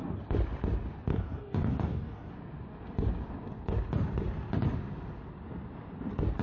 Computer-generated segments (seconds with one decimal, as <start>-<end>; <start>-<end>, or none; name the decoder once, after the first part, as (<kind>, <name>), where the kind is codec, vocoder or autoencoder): 1.1-2.3 (codec, DAC)